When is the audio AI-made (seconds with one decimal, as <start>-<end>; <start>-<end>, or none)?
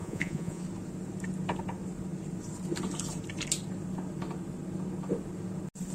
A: 0.0-0.6